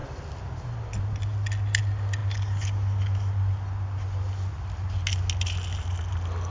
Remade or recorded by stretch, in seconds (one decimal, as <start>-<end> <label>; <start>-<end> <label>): 0.0-6.5 recorded

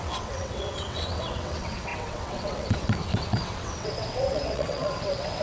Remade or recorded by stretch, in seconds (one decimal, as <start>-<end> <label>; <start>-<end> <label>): 0.0-5.4 remade

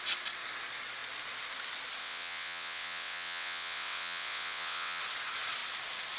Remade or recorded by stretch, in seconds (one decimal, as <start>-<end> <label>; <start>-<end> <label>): 0.0-2.0 recorded; 2.0-5.0 remade; 5.0-6.2 recorded

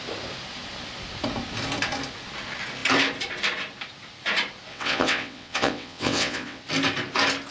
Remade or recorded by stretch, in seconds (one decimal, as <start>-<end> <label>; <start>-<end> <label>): 0.0-4.7 recorded; 4.7-6.6 remade; 6.6-7.5 recorded